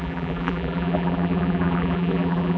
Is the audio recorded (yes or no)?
no